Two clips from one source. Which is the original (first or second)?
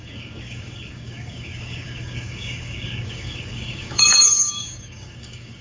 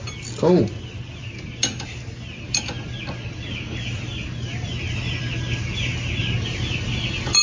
second